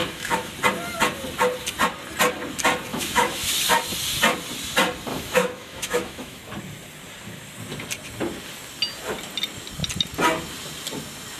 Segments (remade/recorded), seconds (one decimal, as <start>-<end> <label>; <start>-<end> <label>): 0.0-0.5 remade; 0.5-2.9 recorded; 2.9-3.5 remade; 3.5-5.1 recorded; 5.1-6.4 remade; 6.4-11.4 recorded